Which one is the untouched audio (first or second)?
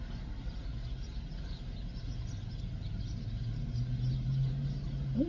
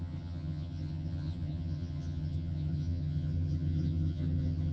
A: first